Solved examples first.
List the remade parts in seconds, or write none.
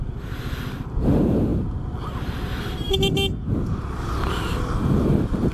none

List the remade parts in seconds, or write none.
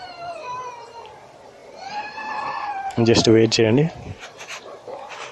1.6-4.8 (vocoder, BigVGAN v2)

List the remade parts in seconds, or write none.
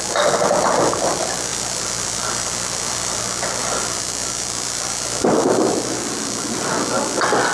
1.5-3.2 (vocoder, BigVGAN v2); 3.6-6.6